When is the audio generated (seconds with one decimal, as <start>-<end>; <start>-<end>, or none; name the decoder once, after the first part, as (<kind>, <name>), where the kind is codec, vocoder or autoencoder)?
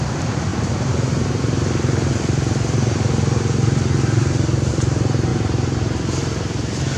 0.0-0.5 (vocoder, BigVGAN v2); 4.7-5.3